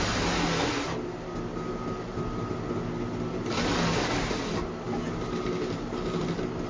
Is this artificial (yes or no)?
no